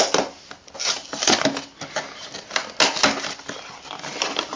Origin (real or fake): real